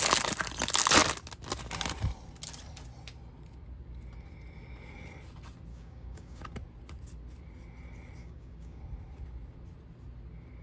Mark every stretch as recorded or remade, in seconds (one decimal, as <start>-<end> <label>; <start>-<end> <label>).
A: 0.0-5.7 recorded; 5.7-6.4 remade; 6.4-8.2 recorded; 8.2-8.8 remade; 8.8-10.6 recorded